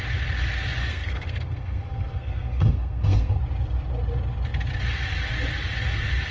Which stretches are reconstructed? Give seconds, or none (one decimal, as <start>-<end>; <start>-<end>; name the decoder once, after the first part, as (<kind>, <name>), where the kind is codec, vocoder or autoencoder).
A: 0.8-3.4 (codec, SNAC)